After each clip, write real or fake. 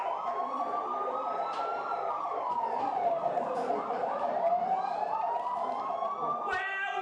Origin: real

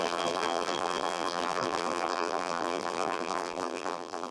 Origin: fake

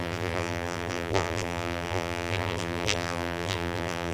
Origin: fake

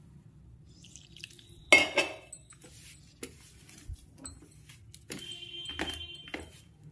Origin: real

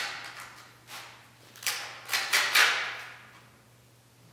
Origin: real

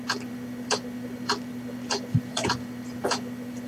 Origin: fake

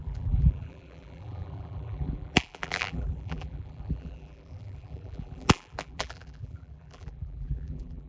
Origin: fake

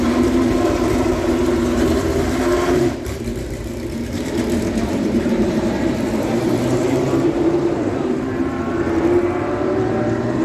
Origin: fake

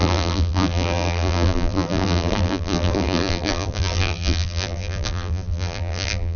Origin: fake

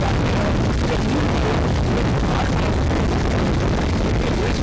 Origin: real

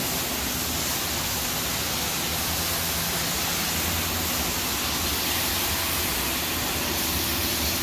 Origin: real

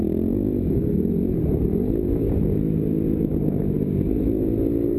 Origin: real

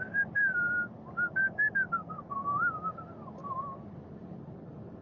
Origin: fake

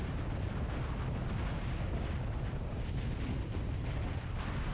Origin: real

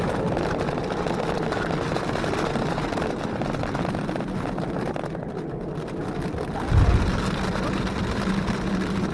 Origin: real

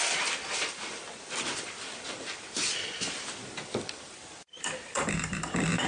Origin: fake